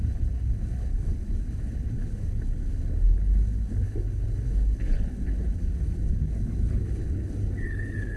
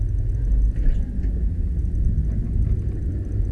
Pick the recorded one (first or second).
second